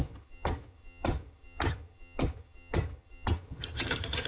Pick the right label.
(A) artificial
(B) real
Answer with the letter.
A